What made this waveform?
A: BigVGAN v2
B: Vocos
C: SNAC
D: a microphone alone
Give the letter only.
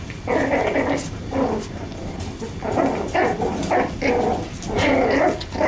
D